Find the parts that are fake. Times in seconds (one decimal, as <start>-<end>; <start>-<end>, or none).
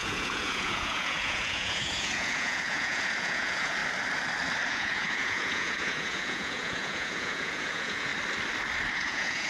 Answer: 0.0-3.8; 4.7-8.1; 8.9-9.5